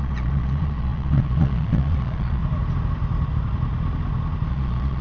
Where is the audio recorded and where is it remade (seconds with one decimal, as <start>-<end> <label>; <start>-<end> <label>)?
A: 0.0-2.4 remade; 2.4-4.5 recorded; 4.5-5.0 remade